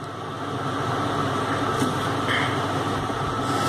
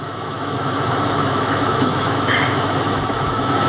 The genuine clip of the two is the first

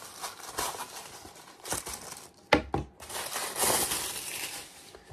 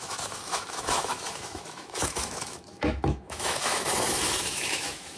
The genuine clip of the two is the first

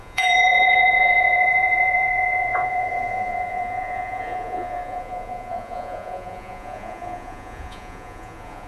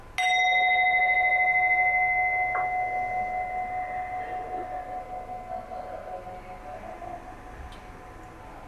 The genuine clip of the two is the second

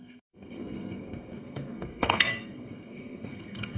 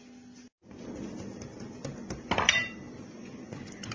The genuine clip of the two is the second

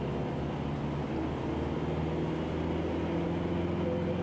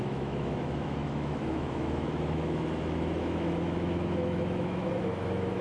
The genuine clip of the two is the first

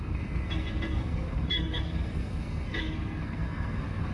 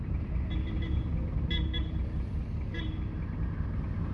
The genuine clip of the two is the second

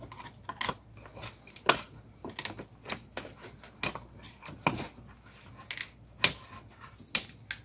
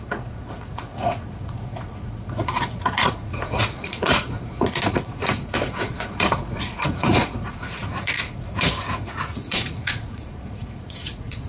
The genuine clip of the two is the first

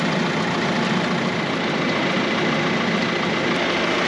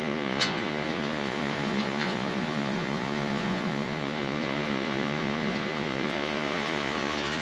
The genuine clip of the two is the first